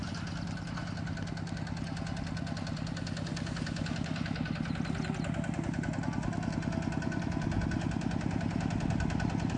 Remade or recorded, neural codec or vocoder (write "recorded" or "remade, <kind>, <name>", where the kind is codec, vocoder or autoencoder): recorded